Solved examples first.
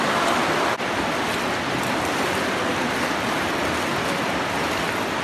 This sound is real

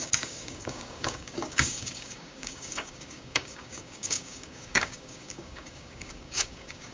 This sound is fake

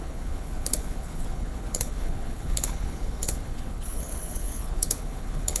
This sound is fake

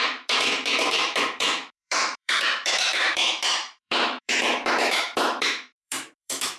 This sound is fake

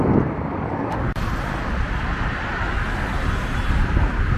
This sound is real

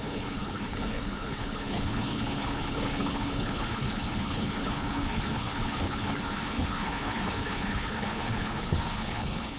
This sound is fake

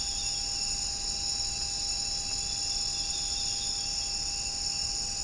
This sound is real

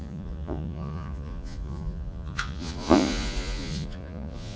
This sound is fake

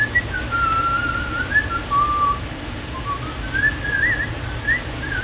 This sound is real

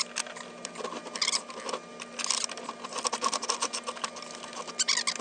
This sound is real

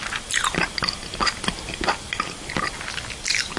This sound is real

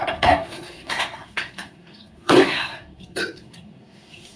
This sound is fake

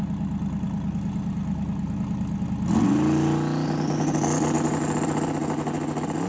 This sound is real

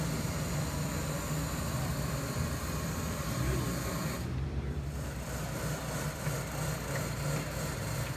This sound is fake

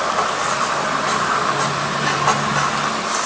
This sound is real